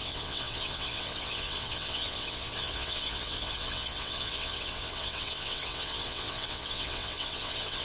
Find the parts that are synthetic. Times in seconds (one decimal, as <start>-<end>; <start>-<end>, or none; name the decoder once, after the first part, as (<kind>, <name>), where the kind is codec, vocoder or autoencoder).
0.0-7.8 (vocoder, WaveNeXt)